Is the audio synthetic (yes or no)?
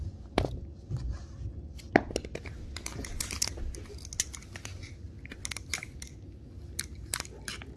no